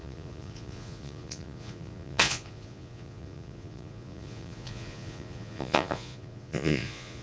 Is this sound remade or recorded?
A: remade